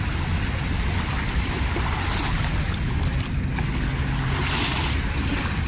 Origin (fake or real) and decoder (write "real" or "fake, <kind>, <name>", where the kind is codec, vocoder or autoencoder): real